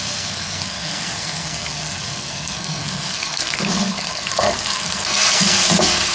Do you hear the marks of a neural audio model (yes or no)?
yes